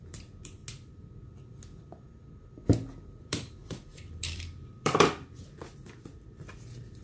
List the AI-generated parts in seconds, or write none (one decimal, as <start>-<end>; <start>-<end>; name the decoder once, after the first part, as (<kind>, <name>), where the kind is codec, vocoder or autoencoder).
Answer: 0.0-0.6 (vocoder, BigVGAN v2); 3.2-7.0